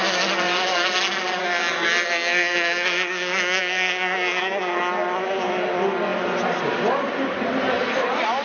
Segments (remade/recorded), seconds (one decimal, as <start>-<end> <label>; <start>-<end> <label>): 0.0-1.4 recorded; 1.4-4.8 remade; 4.8-8.4 recorded